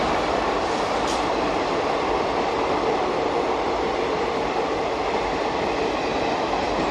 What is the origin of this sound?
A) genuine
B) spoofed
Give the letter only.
A